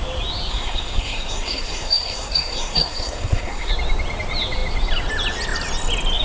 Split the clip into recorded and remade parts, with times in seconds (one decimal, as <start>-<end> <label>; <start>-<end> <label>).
0.0-0.5 recorded; 0.5-3.7 remade; 3.7-6.2 recorded